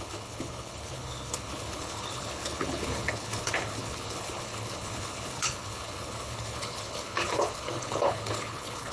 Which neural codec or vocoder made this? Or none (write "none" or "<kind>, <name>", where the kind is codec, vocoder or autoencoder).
codec, HILCodec